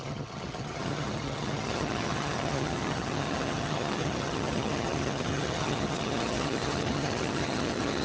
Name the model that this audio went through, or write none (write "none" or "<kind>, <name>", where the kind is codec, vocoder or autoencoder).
vocoder, HiFi-GAN